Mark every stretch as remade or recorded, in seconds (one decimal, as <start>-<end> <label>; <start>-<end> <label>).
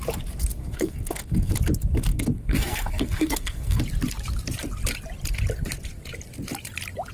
0.0-0.6 recorded; 0.6-1.5 remade; 1.5-2.1 recorded; 2.1-3.8 remade; 3.8-7.1 recorded